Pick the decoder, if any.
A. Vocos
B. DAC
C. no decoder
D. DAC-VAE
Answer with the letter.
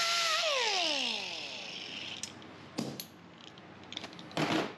C